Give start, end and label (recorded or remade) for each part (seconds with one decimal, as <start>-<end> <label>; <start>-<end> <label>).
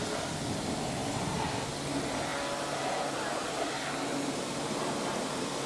0.0-5.7 recorded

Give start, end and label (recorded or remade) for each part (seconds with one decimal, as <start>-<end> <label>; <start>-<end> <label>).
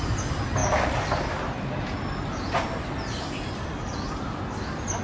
0.0-5.0 recorded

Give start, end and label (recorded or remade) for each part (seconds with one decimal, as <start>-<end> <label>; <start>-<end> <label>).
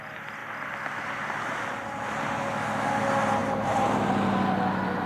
0.0-3.4 recorded; 3.4-4.1 remade; 4.1-5.1 recorded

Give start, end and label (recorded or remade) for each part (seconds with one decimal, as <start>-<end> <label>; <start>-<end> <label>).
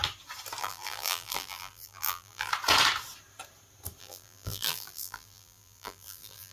0.0-0.6 recorded; 0.6-2.5 remade; 2.5-4.0 recorded; 4.0-6.5 remade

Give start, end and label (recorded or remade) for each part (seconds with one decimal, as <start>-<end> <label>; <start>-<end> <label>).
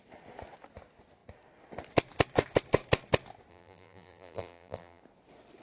0.0-3.5 recorded; 3.5-5.0 remade; 5.0-5.6 recorded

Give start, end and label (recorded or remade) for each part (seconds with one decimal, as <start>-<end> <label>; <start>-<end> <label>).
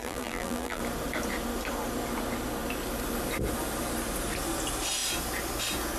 0.0-0.8 remade; 0.8-6.0 recorded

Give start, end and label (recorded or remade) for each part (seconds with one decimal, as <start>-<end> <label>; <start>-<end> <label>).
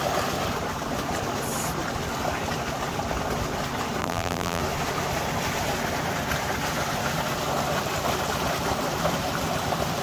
0.0-4.0 recorded; 4.0-4.6 remade; 4.6-10.0 recorded